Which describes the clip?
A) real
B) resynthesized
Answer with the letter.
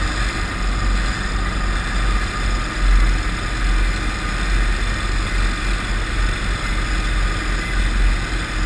A